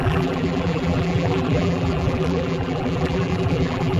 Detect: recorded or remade remade